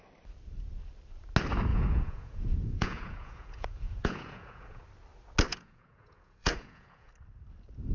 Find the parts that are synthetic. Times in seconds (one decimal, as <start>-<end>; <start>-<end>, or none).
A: 1.7-4.8; 5.5-7.1